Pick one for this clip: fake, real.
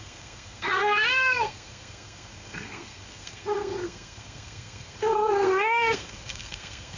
fake